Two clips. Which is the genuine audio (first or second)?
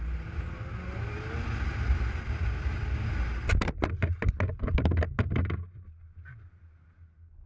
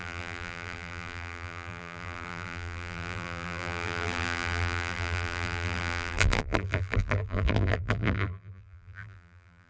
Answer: first